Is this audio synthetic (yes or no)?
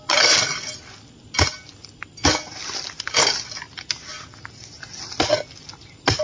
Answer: no